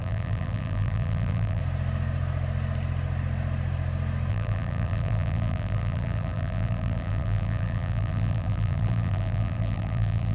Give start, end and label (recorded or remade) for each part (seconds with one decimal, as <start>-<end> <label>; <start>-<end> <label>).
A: 0.0-1.6 remade; 1.6-4.3 recorded; 4.3-10.3 remade